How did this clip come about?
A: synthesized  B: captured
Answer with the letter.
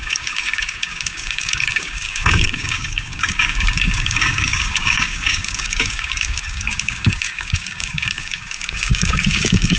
A